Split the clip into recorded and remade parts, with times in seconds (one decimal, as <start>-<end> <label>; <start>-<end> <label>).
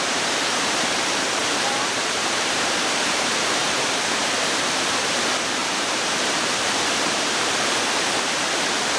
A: 0.0-1.4 remade; 1.4-2.0 recorded; 2.0-9.0 remade